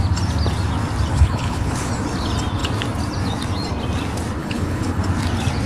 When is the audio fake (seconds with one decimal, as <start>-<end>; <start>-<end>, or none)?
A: 1.1-1.9; 4.4-5.0